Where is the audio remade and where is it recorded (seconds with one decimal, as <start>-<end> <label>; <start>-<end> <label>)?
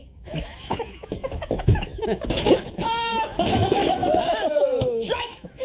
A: 0.0-5.6 remade